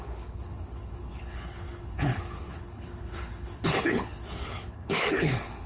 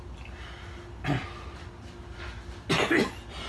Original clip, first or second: second